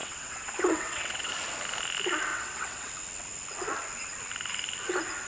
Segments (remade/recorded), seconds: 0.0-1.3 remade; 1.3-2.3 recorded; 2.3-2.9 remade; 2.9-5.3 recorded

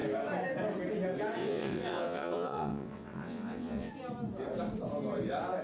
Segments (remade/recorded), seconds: 0.0-1.4 recorded; 1.4-3.9 remade; 3.9-5.6 recorded

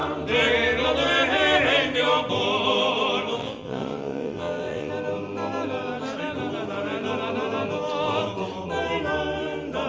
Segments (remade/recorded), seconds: 0.0-3.4 recorded; 3.4-4.9 remade; 4.9-9.9 recorded

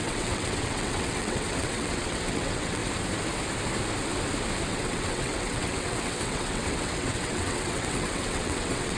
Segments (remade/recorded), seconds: 0.0-2.8 remade; 2.8-4.7 recorded; 4.7-9.0 remade

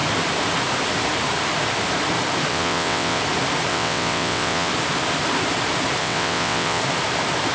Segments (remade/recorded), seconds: 0.0-2.5 recorded; 2.5-3.2 remade; 3.2-3.7 recorded; 3.7-4.7 remade; 4.7-6.0 recorded; 6.0-6.8 remade; 6.8-7.5 recorded